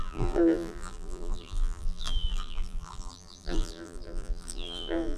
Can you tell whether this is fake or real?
fake